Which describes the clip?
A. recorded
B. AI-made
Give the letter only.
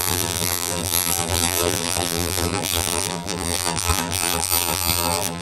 B